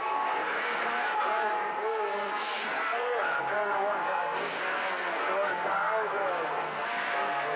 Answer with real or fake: fake